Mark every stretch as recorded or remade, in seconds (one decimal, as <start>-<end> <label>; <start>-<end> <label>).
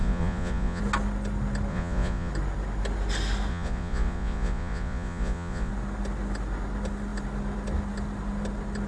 0.0-0.8 remade; 0.8-1.7 recorded; 1.7-2.3 remade; 2.3-3.5 recorded; 3.5-5.7 remade; 5.7-8.9 recorded